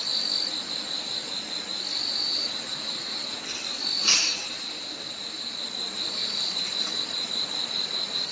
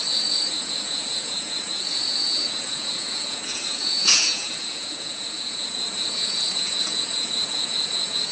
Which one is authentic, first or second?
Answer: first